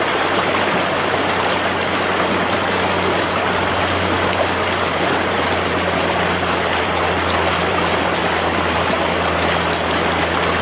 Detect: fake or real fake